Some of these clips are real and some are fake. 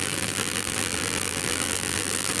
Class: fake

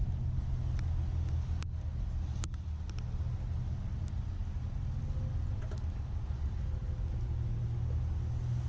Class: real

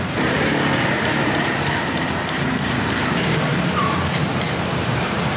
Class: fake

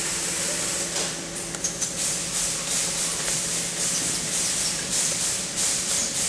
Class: fake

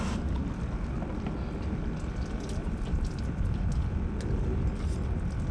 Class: real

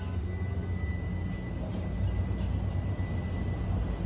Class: real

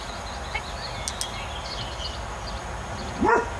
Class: real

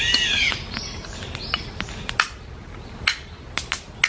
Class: real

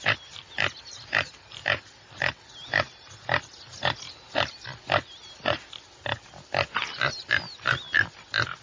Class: real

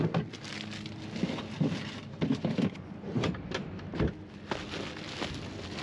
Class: real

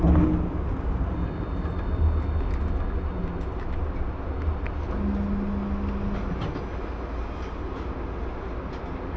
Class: real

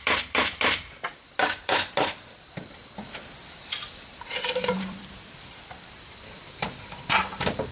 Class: fake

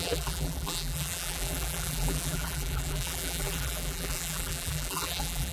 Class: fake